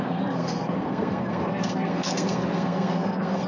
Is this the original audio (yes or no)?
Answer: no